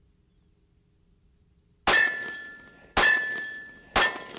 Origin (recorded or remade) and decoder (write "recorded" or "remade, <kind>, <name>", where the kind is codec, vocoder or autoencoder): recorded